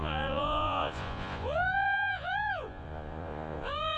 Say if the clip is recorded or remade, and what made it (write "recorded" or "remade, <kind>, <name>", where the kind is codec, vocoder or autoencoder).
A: remade, vocoder, Vocos